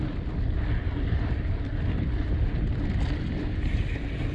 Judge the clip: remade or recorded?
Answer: recorded